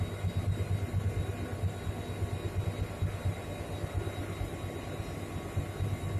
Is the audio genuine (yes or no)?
yes